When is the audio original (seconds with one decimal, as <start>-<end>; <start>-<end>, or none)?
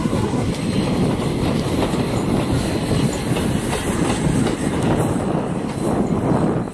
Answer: 0.5-6.7